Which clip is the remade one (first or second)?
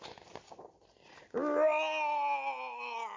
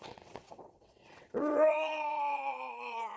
second